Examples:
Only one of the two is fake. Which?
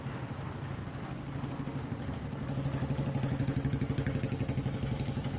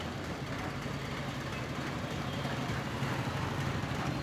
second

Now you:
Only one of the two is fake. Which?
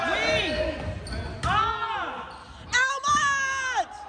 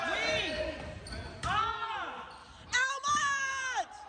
second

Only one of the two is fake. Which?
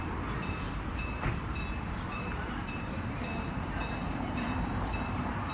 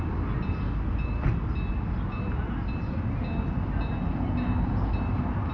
first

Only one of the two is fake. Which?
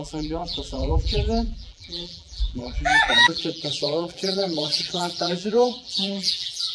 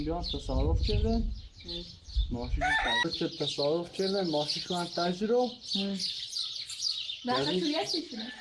first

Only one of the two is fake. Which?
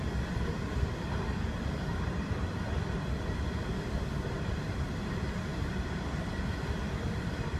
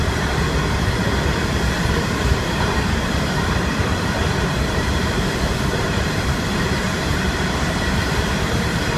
second